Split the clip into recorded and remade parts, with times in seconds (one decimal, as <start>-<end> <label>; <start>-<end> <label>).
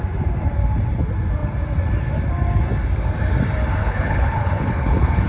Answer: 0.0-3.8 recorded; 3.8-5.3 remade